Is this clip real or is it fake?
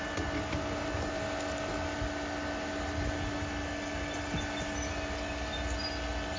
real